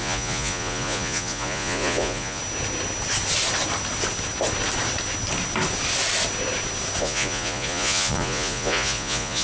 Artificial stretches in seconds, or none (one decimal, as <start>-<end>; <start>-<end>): 0.0-2.4; 7.0-9.4

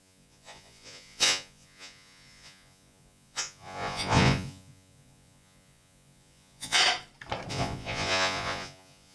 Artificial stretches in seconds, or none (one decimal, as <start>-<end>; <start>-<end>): 0.0-6.8; 7.5-9.1